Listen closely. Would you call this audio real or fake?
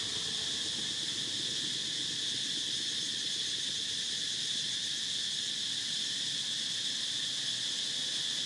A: real